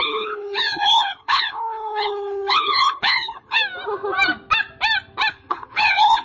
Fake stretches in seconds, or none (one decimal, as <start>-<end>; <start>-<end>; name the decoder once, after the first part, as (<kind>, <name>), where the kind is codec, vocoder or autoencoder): 0.0-3.6 (codec, HILCodec); 5.3-6.2